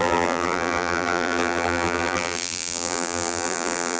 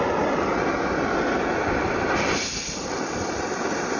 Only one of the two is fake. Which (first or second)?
first